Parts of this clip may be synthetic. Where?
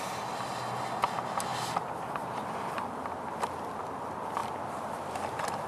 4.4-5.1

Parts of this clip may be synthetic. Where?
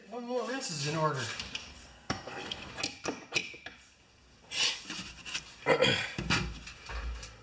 0.0-0.6; 1.7-2.7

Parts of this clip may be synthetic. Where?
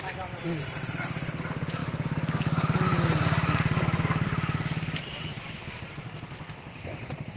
0.0-1.8; 5.5-7.4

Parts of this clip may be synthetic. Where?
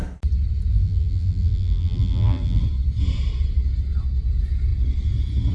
0.7-2.6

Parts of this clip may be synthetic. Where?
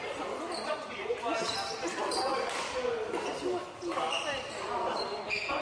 none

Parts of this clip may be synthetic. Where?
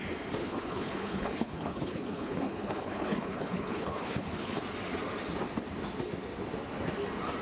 0.4-4.6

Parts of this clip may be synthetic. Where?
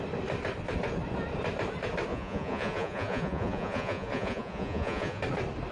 2.1-5.2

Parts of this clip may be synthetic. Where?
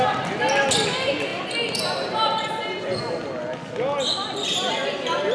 none